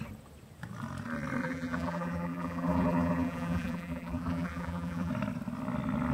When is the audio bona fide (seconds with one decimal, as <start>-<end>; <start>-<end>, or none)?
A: 0.0-1.4; 5.1-6.1